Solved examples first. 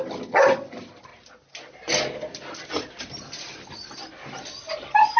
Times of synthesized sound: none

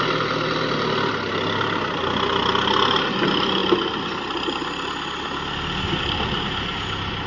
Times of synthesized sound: none

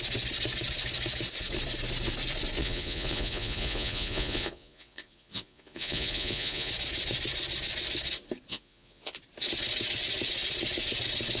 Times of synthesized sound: 2.6-6.7 (vocoder, Vocos); 8.5-9.2

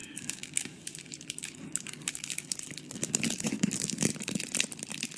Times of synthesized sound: 0.0-4.1 (codec, DAC)